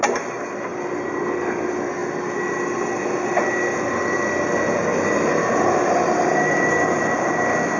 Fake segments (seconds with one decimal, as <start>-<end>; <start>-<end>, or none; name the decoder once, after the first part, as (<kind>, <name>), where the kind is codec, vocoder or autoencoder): 4.9-7.3 (vocoder, BigVGAN v2)